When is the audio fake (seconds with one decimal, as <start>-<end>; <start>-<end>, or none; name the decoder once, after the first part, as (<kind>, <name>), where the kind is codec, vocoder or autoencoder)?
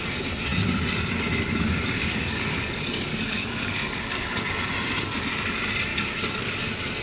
2.0-4.4 (codec, DAC); 5.9-6.6